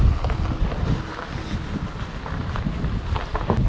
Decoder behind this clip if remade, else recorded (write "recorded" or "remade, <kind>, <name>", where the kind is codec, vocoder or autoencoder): recorded